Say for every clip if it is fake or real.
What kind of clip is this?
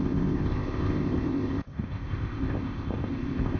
fake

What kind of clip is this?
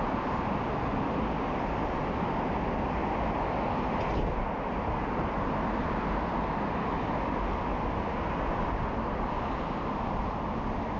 real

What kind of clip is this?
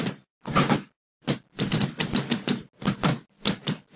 real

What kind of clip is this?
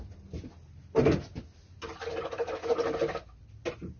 real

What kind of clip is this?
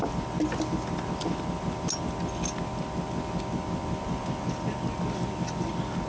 real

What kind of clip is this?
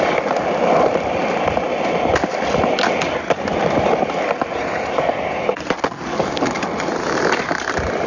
real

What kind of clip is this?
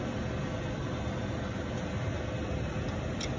real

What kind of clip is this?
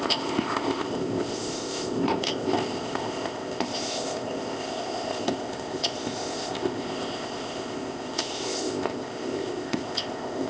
fake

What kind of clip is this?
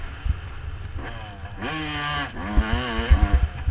real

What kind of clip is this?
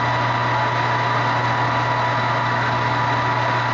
real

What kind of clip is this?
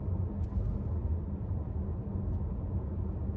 real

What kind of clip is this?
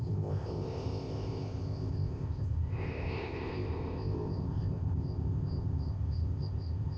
fake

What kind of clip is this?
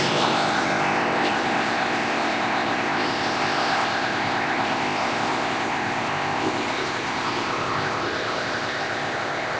fake